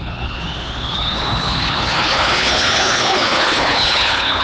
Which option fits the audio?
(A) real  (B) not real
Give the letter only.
B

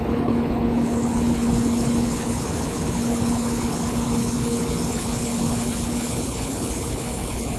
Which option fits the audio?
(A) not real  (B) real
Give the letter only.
A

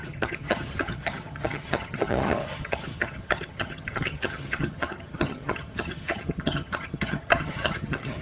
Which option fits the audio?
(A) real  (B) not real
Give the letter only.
B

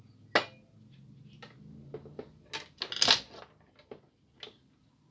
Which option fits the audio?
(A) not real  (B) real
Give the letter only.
B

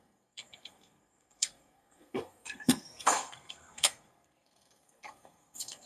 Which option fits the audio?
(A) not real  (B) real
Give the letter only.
A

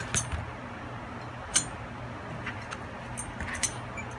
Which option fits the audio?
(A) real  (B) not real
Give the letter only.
A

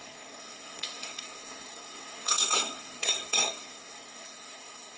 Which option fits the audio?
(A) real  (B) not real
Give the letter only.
B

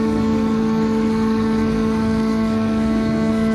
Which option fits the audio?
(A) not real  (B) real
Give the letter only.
A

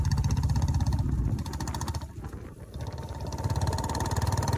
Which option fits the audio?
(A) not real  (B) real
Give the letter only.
B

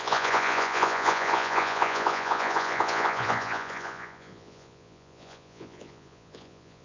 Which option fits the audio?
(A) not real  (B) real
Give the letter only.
A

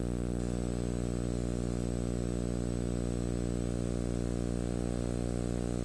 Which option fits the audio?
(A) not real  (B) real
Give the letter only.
B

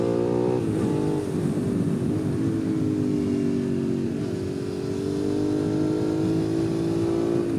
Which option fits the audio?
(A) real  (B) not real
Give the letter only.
A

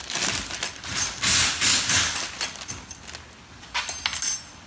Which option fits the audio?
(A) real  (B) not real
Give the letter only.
A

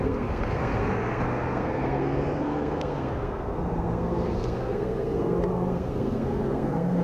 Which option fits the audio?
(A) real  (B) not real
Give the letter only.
B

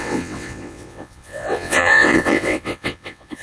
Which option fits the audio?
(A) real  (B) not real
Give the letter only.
B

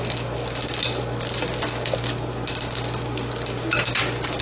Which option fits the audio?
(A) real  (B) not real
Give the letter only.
A